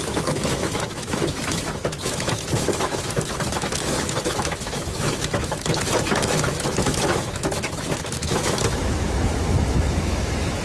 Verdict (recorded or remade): remade